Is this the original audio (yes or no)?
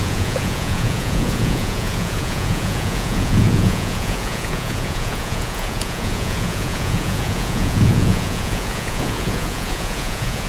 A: no